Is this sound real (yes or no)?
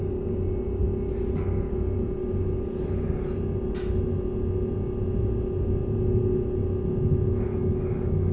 yes